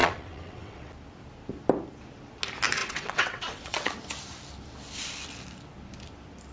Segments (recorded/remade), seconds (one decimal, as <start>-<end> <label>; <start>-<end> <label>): 0.0-0.9 remade; 0.9-2.8 recorded; 2.8-3.9 remade; 3.9-6.5 recorded